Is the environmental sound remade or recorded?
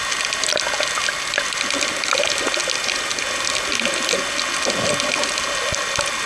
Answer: recorded